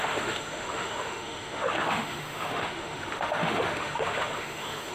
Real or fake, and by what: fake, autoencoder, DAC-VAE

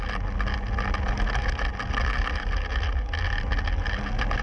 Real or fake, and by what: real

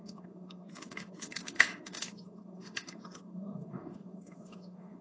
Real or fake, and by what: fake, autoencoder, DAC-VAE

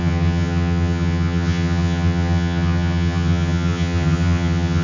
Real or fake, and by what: fake, vocoder, HiFi-GAN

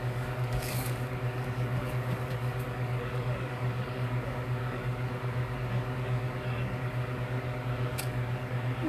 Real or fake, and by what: fake, codec, DAC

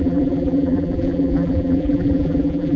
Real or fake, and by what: fake, vocoder, BigVGAN v2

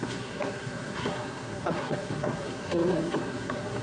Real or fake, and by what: fake, codec, SNAC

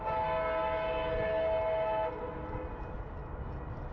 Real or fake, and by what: real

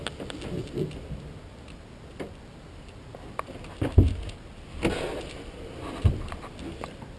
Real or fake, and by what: real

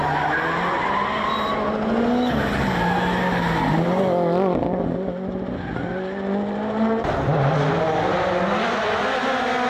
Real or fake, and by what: real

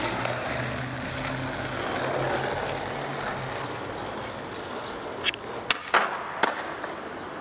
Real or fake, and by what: real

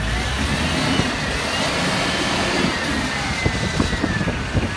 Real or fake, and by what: real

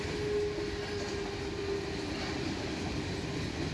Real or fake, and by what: real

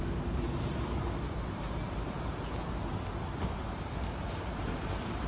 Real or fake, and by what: real